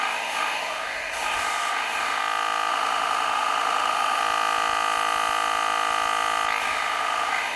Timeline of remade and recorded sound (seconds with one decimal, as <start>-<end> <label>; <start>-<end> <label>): 0.0-2.2 remade; 2.2-2.7 recorded; 2.7-4.2 remade; 4.2-6.6 recorded; 6.6-7.6 remade